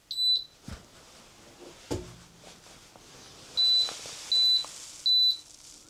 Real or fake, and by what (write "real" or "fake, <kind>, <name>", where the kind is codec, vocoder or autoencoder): real